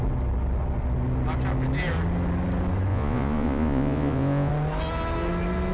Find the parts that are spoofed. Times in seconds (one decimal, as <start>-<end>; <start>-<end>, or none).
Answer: 2.9-4.5

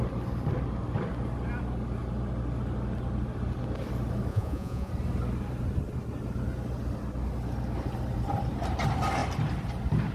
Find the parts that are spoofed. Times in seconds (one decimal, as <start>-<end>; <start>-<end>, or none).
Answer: 4.3-4.9

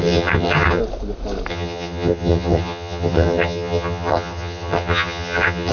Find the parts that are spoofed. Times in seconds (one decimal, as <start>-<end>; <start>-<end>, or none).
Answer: 0.0-0.8; 1.5-5.7

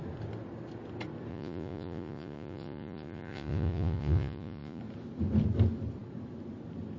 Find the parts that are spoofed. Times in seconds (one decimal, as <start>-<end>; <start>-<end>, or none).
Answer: 1.3-4.8

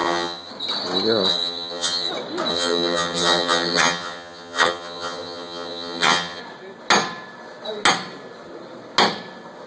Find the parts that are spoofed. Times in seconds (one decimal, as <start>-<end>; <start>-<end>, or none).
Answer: 0.0-0.5; 1.3-2.1; 2.5-6.4